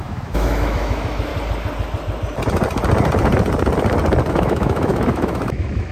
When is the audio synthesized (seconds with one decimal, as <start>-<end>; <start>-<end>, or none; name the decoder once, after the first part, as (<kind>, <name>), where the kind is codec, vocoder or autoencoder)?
0.0-1.3 (autoencoder, DAC-VAE); 4.3-5.9

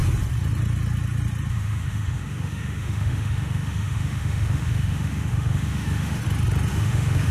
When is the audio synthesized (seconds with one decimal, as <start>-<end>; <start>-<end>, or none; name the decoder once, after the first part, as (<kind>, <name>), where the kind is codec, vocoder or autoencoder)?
1.5-6.2 (autoencoder, DAC-VAE); 6.7-7.3

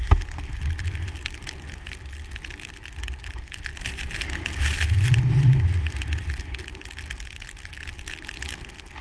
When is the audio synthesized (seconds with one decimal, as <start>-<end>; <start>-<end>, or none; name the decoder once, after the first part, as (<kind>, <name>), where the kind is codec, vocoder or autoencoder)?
none

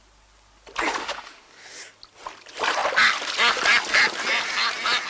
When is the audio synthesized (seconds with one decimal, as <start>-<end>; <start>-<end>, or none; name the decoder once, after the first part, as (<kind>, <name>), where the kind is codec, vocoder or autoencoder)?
1.0-1.5 (autoencoder, DAC-VAE)

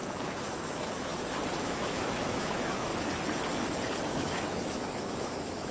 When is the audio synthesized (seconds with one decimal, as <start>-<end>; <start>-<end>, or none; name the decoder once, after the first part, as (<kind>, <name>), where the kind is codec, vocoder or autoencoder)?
0.0-1.1 (autoencoder, DAC-VAE); 1.6-2.9; 4.1-5.7

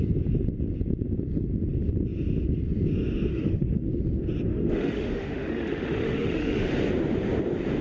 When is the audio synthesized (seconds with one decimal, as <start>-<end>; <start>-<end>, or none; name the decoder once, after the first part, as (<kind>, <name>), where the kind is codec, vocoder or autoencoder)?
3.3-3.9 (autoencoder, DAC-VAE); 4.5-6.7

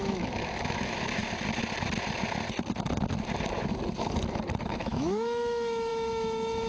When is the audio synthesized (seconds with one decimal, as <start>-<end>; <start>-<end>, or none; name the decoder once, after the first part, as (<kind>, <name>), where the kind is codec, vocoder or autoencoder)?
0.0-1.2 (autoencoder, DAC-VAE); 4.7-6.7